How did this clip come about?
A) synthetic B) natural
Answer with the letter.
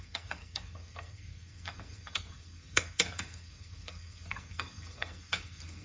A